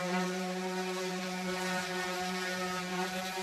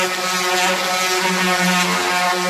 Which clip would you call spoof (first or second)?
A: first